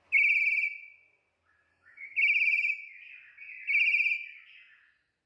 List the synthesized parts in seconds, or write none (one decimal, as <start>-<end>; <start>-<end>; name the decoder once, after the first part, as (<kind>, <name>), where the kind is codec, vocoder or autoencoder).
1.7-3.0 (autoencoder, DAC-VAE)